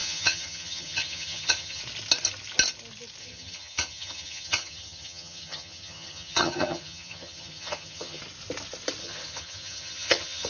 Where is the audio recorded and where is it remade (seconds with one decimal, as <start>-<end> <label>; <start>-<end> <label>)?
0.0-1.8 remade; 1.8-3.2 recorded; 3.2-8.2 remade; 8.2-9.0 recorded; 9.0-10.5 remade